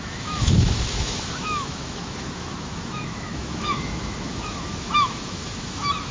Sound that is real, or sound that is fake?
fake